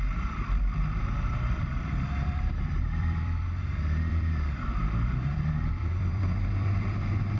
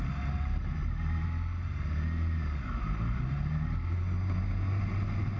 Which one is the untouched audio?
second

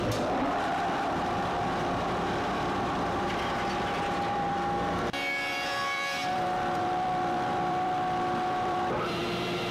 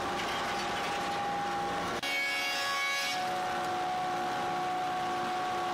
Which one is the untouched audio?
second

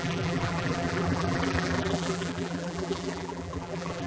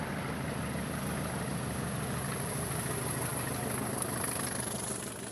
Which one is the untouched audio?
second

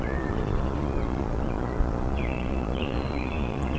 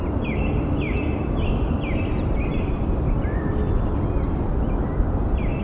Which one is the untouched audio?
second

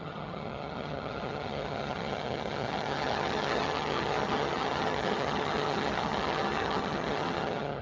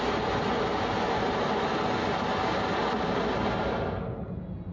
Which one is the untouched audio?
second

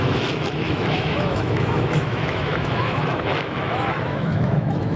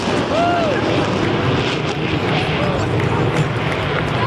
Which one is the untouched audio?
second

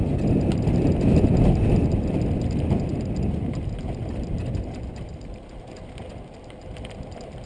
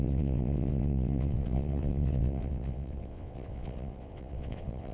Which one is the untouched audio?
first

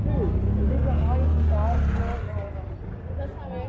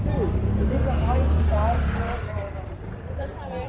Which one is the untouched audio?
first